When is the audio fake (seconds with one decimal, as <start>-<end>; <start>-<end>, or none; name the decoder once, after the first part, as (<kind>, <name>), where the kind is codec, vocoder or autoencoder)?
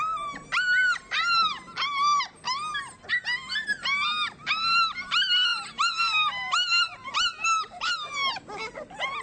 none